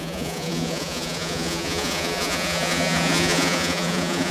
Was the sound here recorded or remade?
remade